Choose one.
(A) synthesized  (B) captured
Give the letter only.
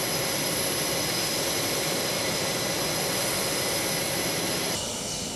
B